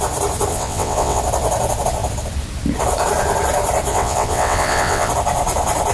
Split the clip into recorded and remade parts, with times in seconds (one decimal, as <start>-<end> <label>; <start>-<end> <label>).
0.0-0.5 recorded; 0.5-1.2 remade; 1.2-3.9 recorded; 3.9-5.1 remade; 5.1-5.9 recorded